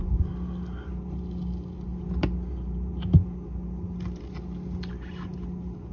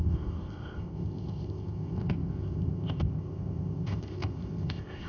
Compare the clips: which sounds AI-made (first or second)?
second